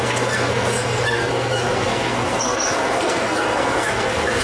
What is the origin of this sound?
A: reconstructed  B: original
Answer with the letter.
A